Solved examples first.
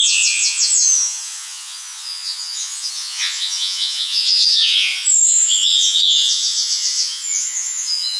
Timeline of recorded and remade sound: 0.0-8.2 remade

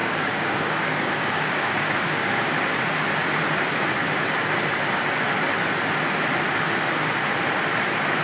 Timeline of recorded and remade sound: 0.0-2.5 remade; 2.5-8.2 recorded

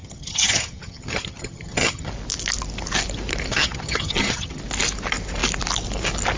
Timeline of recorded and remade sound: 0.0-2.1 remade; 2.1-3.5 recorded; 3.5-4.6 remade; 4.6-6.4 recorded